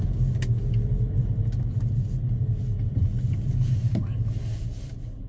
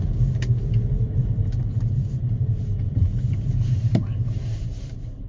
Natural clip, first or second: first